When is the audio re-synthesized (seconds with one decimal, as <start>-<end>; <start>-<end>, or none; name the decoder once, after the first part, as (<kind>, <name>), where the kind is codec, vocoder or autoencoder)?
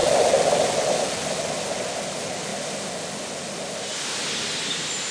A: none